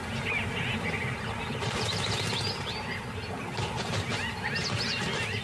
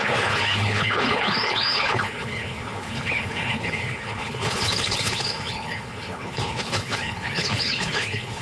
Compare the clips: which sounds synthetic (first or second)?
second